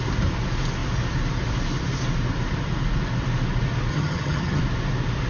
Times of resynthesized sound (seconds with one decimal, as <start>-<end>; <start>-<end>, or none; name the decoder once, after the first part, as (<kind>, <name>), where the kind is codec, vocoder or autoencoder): 3.9-4.6 (vocoder, HiFi-GAN)